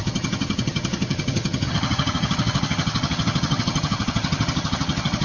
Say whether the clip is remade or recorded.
remade